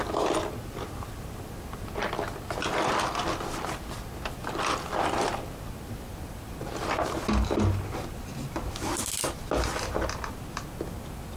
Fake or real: real